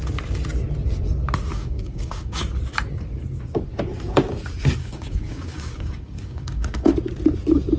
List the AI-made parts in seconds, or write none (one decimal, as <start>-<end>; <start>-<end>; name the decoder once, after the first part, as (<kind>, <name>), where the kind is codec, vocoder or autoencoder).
1.5-2.4 (codec, DAC); 4.8-6.9